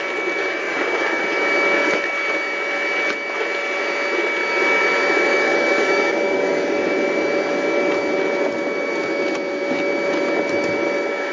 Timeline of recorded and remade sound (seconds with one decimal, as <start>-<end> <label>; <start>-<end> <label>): 0.0-0.4 recorded; 0.4-1.2 remade; 1.2-5.3 recorded; 5.3-6.9 remade; 6.9-11.3 recorded